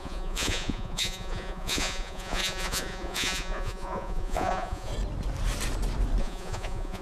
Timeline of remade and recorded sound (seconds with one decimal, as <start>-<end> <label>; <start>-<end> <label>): 0.0-4.9 remade; 4.9-6.2 recorded; 6.2-7.0 remade